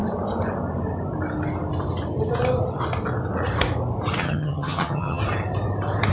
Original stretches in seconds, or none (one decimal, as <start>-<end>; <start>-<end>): 0.0-4.2; 5.2-6.1